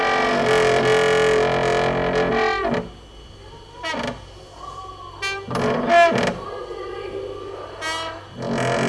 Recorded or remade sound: recorded